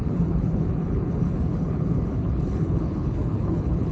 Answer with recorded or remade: remade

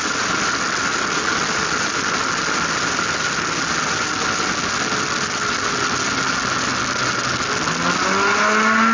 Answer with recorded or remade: recorded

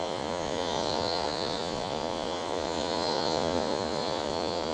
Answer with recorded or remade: remade